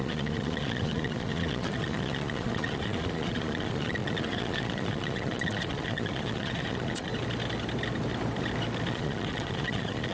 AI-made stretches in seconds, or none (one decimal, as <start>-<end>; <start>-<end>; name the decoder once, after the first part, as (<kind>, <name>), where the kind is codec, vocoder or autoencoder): 0.0-7.1 (vocoder, Vocos); 8.9-10.1